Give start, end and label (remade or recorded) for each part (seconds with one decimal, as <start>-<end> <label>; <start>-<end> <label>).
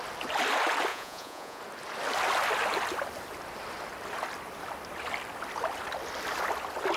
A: 0.0-0.9 recorded; 0.9-1.6 remade; 1.6-7.0 recorded